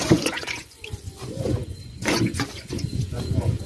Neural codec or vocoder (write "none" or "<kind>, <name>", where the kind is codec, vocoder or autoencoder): vocoder, Vocos